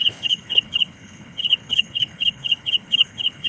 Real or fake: fake